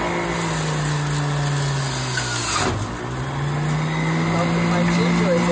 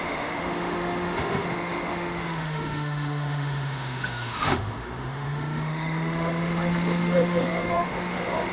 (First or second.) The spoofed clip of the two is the second